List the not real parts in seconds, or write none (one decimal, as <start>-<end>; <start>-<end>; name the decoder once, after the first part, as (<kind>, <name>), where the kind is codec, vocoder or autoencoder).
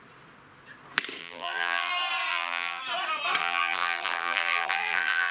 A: 1.2-1.9 (vocoder, BigVGAN v2); 2.3-2.8; 3.4-5.3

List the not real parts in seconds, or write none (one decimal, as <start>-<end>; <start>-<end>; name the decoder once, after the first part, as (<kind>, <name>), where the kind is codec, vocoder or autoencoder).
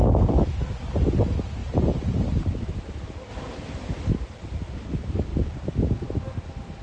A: 1.6-2.7 (vocoder, BigVGAN v2)